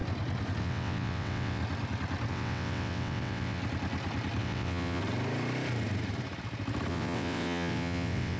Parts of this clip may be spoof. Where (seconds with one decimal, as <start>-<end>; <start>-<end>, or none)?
0.6-1.6; 2.3-3.6; 4.4-5.0; 6.9-8.4